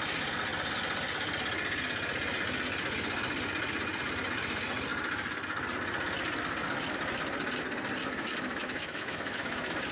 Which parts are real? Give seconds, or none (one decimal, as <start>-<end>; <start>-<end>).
0.0-8.0